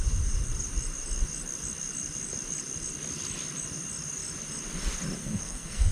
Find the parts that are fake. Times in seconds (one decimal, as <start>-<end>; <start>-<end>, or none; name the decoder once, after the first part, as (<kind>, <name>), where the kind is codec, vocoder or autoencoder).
5.2-5.9 (codec, SNAC)